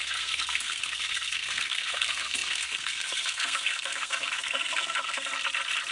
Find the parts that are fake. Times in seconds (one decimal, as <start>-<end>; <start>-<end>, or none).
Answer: 0.0-5.3